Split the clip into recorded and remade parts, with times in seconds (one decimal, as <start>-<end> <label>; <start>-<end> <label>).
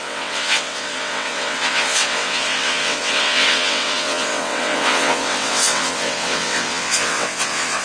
0.0-7.8 remade